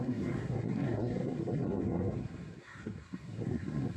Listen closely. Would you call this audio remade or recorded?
remade